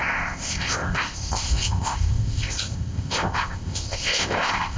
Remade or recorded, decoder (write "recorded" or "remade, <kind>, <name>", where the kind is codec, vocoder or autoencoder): remade, codec, ZipCodec